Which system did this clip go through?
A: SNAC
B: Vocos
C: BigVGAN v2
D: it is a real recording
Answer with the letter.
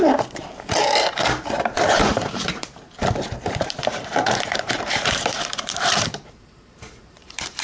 C